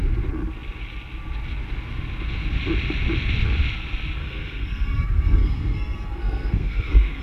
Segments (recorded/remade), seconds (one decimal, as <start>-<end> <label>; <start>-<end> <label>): 0.0-4.2 recorded; 4.2-7.2 remade